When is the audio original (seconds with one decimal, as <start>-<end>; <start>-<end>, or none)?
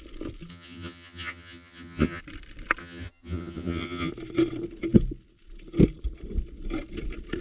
0.0-0.5; 2.2-2.8; 4.1-7.4